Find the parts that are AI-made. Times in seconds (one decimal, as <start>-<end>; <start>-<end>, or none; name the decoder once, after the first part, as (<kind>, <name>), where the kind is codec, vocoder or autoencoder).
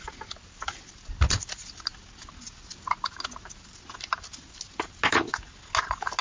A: none